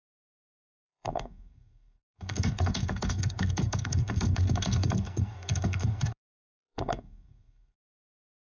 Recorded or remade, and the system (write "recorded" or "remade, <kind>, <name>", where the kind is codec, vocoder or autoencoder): remade, codec, SNAC